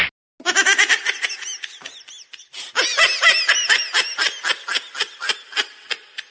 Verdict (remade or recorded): recorded